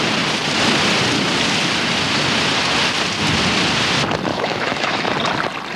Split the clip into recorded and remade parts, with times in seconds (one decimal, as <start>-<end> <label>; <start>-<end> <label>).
0.0-4.3 recorded; 4.3-5.1 remade; 5.1-5.8 recorded

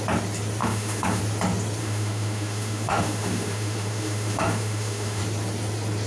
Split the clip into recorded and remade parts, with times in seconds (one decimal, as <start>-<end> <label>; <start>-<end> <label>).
0.0-0.6 recorded; 0.6-1.2 remade; 1.2-1.8 recorded; 1.8-5.2 remade; 5.2-6.1 recorded

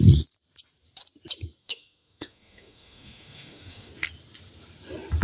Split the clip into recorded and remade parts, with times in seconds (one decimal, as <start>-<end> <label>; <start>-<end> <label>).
0.0-1.6 recorded; 1.6-3.9 remade; 3.9-5.2 recorded

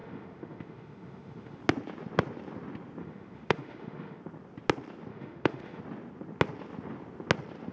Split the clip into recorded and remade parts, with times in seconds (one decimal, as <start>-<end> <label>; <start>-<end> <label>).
0.0-1.6 remade; 1.6-3.0 recorded; 3.0-4.2 remade; 4.2-5.1 recorded; 5.1-5.8 remade; 5.8-7.7 recorded

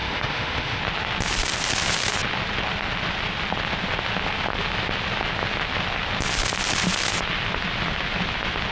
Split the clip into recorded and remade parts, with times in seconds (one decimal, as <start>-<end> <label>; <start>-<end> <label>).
0.0-0.8 remade; 0.8-8.7 recorded

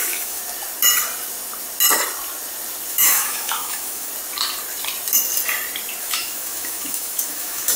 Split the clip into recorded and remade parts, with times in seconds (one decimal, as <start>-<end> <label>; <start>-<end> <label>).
0.0-0.4 remade; 0.4-2.9 recorded; 2.9-4.1 remade; 4.1-6.0 recorded; 6.0-7.8 remade

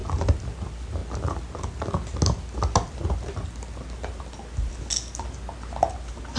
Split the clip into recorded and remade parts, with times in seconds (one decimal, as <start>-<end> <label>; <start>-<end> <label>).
0.0-6.4 recorded

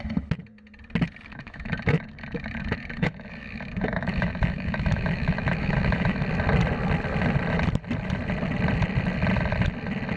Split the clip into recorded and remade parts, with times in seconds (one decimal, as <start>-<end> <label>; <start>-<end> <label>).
0.0-1.3 recorded; 1.3-6.2 remade; 6.2-10.2 recorded